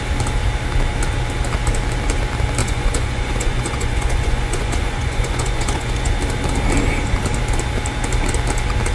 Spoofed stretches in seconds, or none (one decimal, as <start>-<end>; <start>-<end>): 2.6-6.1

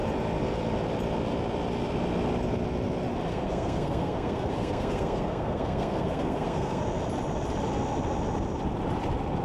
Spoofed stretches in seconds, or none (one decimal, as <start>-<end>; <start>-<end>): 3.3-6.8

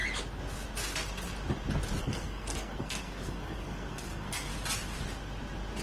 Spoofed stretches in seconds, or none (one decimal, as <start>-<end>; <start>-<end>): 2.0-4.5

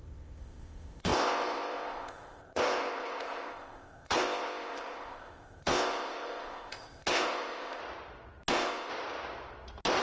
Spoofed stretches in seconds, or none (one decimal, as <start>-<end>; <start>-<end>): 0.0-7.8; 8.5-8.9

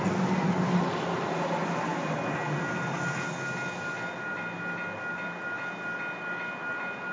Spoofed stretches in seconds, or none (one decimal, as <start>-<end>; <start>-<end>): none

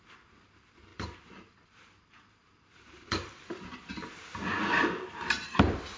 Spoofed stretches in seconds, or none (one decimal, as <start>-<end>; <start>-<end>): 0.9-3.9